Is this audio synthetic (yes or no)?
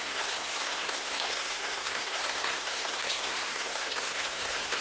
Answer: yes